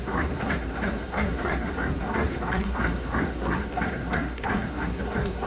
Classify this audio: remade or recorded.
remade